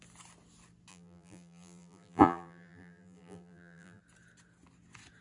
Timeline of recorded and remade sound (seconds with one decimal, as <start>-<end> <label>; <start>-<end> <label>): 0.0-0.9 recorded; 0.9-4.0 remade; 4.0-5.2 recorded